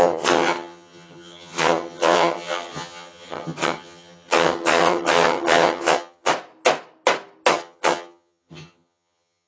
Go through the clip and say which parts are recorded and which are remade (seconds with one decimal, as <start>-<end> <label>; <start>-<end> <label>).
0.0-6.3 remade; 6.3-7.5 recorded; 7.5-9.5 remade